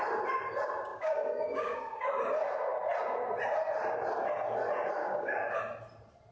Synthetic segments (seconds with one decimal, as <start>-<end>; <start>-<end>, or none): 0.9-2.1; 5.0-5.6